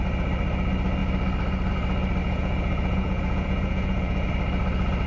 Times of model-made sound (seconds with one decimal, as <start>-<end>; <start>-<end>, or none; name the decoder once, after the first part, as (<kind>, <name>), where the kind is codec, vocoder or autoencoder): 2.2-4.3 (vocoder, Vocos)

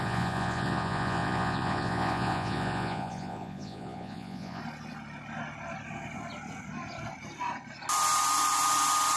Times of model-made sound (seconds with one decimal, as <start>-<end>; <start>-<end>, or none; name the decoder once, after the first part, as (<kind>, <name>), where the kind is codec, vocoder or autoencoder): 0.0-4.6 (vocoder, Vocos)

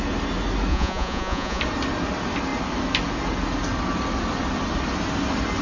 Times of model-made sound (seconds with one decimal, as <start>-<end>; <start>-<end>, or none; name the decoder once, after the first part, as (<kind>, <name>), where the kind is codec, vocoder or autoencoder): 0.7-1.6 (vocoder, Vocos)

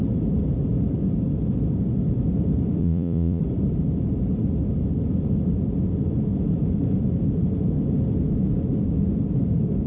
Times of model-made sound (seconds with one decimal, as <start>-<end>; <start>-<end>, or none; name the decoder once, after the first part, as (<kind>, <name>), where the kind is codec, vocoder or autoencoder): 2.8-3.4 (vocoder, Vocos)